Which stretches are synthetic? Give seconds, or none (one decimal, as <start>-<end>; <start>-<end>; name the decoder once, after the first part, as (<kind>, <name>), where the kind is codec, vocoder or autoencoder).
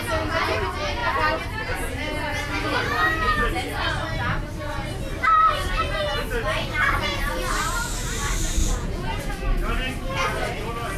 8.6-9.3 (vocoder, Vocos)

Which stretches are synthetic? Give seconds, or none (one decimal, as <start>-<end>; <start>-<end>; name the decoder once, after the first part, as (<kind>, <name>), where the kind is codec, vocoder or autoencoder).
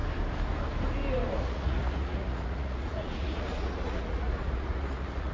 1.3-5.3 (vocoder, Vocos)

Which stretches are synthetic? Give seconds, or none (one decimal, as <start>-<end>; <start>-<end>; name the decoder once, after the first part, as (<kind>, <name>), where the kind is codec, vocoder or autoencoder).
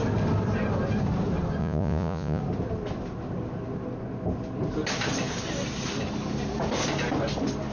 1.6-2.4 (vocoder, Vocos)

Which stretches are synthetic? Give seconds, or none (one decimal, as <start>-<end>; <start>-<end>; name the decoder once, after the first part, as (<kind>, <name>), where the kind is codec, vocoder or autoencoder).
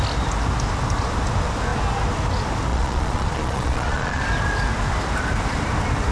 2.7-4.2 (vocoder, Vocos)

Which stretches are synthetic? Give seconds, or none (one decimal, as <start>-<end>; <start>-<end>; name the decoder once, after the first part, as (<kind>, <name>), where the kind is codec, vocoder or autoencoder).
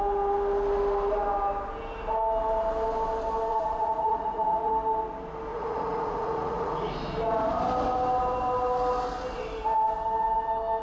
3.5-4.7 (vocoder, Vocos); 5.5-6.9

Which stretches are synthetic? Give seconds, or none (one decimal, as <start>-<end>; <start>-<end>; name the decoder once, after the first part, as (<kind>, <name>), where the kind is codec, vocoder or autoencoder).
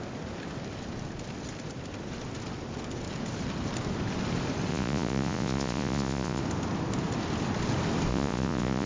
4.7-6.4 (vocoder, Vocos); 8.1-8.9